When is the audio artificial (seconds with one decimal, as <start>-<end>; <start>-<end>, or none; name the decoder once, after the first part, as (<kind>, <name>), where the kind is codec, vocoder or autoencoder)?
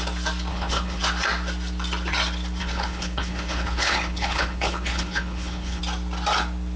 0.5-1.0 (codec, HILCodec); 2.6-5.8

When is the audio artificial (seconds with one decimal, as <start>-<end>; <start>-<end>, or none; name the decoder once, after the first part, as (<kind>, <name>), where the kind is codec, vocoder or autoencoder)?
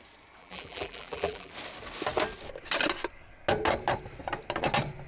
0.4-1.5 (vocoder, BigVGAN v2)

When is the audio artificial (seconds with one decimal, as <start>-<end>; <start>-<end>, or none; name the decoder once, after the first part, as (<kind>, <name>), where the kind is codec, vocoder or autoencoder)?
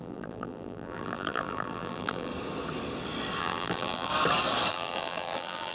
0.0-2.3 (vocoder, BigVGAN v2); 3.4-4.1; 4.7-5.7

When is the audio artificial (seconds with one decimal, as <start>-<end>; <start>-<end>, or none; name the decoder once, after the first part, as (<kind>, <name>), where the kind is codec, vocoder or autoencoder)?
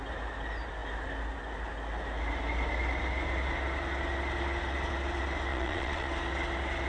5.5-6.1 (vocoder, Vocos)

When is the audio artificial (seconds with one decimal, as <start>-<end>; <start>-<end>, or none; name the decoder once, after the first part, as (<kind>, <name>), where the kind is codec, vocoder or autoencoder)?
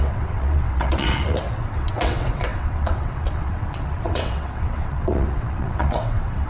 0.0-6.5 (vocoder, WaveNeXt)